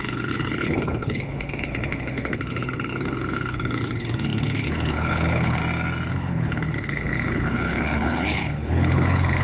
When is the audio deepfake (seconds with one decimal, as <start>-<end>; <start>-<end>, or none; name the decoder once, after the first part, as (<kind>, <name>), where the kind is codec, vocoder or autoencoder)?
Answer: 0.0-5.6 (codec, HILCodec); 6.1-9.4